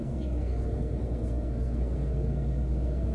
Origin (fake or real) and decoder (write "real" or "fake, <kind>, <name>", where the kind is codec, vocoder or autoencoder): fake, codec, SNAC